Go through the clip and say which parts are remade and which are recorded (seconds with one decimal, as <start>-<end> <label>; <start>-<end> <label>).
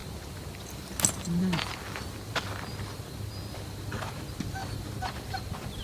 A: 0.0-5.8 recorded